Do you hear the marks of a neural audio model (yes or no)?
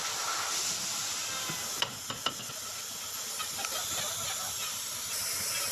no